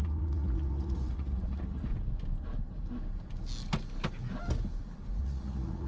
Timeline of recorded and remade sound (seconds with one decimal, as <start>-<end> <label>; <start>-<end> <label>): 0.0-1.9 remade; 1.9-5.2 recorded; 5.2-5.9 remade